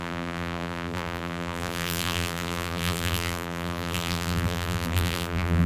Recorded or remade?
remade